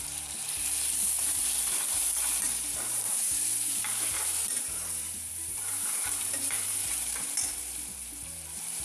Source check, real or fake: fake